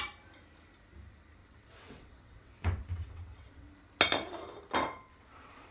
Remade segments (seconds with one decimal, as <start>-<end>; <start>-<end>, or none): 1.4-3.7; 4.8-5.7